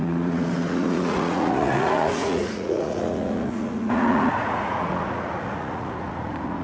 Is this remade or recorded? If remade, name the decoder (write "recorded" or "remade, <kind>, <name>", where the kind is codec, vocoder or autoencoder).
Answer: remade, vocoder, Vocos